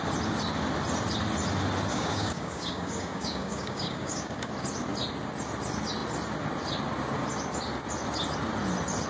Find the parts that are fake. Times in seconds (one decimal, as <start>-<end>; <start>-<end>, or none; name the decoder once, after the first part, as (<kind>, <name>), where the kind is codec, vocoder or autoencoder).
1.9-4.5 (codec, DAC)